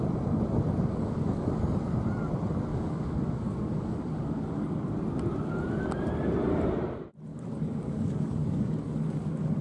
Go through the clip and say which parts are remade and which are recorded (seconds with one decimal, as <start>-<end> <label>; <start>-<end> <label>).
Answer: 0.0-0.9 recorded; 0.9-1.5 remade; 1.5-2.7 recorded; 2.7-4.9 remade; 4.9-7.3 recorded; 7.3-9.6 remade